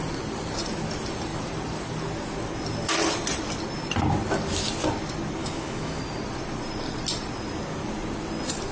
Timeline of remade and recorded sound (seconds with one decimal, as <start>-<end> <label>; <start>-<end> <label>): 0.0-5.4 recorded; 5.4-6.0 remade; 6.0-8.7 recorded